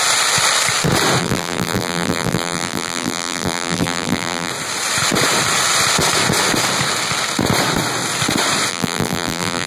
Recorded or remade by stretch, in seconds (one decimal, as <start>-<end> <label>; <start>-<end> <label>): 0.0-1.2 recorded; 1.2-4.5 remade; 4.5-8.7 recorded; 8.7-9.7 remade